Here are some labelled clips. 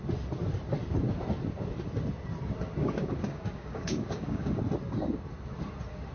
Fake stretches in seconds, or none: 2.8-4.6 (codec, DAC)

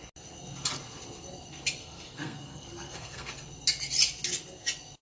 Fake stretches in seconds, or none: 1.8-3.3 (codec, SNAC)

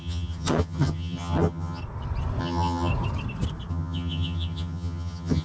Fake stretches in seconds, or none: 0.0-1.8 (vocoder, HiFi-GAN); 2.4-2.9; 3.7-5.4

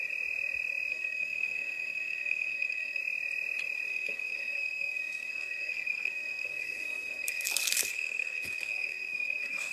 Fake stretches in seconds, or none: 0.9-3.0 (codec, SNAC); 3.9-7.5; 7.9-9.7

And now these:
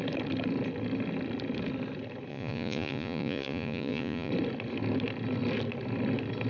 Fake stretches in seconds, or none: 2.3-4.3 (vocoder, Vocos)

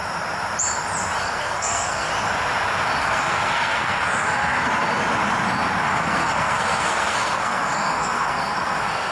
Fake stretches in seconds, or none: 1.2-2.1 (codec, SNAC); 3.0-4.7; 5.8-9.1

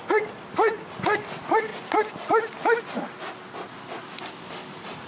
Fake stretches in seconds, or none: none